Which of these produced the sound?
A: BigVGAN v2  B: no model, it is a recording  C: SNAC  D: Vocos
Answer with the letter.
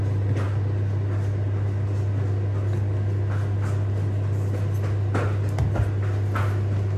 B